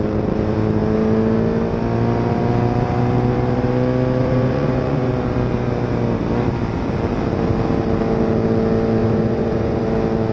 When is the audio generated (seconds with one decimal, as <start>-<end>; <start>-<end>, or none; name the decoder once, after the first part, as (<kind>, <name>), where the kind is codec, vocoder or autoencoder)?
4.2-5.1 (vocoder, Vocos); 9.0-9.9